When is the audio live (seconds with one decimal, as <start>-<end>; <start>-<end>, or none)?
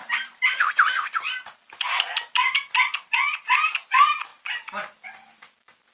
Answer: 2.1-4.3; 5.5-5.9